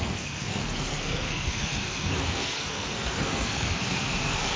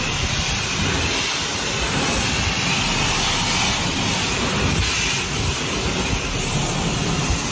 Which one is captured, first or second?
second